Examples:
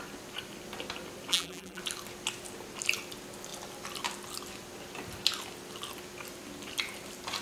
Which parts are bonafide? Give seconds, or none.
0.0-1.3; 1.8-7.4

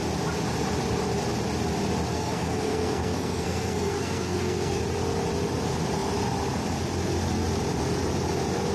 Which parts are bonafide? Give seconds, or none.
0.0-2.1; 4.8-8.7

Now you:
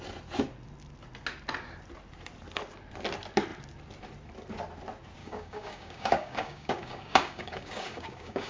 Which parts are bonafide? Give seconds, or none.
0.0-5.2

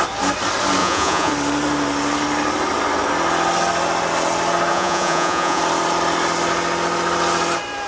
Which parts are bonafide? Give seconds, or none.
0.0-0.8; 1.3-4.7; 5.6-7.9